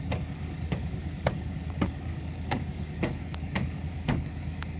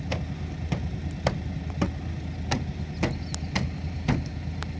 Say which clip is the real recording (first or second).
second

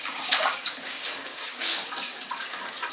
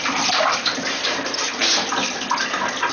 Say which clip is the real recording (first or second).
second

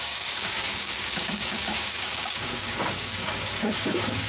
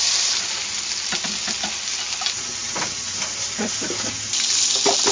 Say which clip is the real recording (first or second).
second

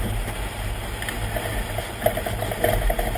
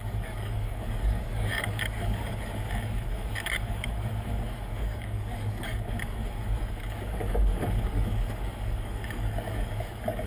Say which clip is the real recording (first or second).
first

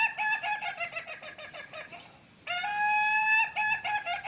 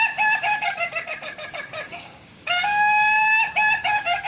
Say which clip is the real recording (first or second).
first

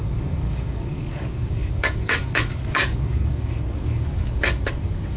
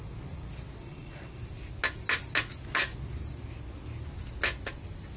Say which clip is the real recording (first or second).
second